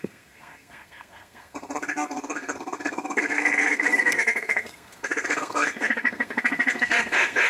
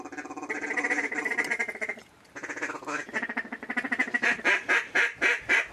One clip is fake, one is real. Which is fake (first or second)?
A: first